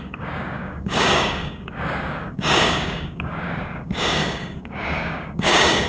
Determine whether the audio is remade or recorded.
remade